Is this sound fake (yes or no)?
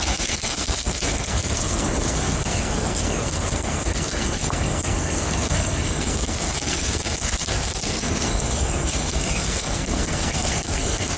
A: yes